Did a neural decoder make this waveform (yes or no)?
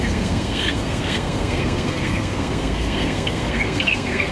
yes